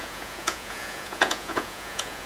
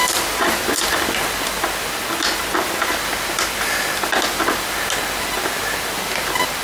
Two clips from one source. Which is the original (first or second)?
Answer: second